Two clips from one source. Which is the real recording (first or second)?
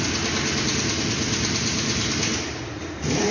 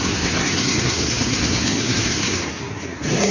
first